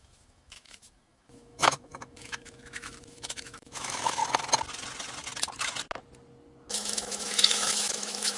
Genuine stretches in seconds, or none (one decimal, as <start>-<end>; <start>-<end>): 4.2-6.7